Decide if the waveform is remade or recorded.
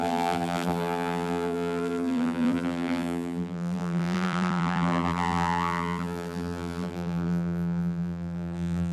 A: remade